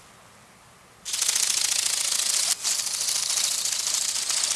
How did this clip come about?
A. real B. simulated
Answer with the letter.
A